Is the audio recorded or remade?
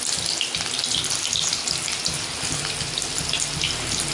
recorded